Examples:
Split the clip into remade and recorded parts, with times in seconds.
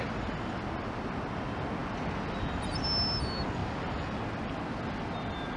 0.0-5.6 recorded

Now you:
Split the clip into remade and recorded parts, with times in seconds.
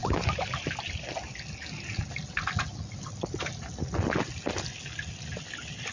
0.0-5.9 recorded